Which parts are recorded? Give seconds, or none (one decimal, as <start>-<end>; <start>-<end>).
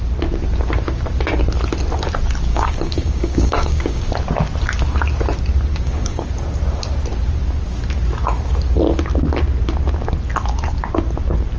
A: 0.0-2.5; 4.1-5.7; 6.3-11.6